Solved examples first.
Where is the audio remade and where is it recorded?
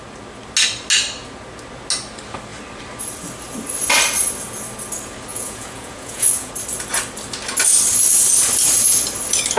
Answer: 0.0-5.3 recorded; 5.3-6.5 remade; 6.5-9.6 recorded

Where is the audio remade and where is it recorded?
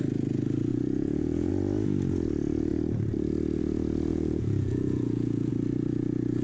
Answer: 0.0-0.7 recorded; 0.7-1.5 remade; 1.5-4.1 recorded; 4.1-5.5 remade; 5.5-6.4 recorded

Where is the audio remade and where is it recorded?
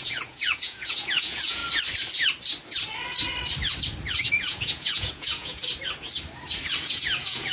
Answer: 0.0-1.6 remade; 1.6-4.3 recorded; 4.3-5.6 remade; 5.6-6.8 recorded; 6.8-7.5 remade